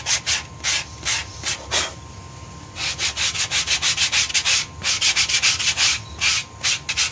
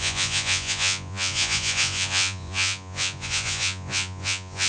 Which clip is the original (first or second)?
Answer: first